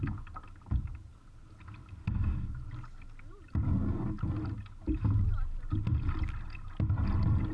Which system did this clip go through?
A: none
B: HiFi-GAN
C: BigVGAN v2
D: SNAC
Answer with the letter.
A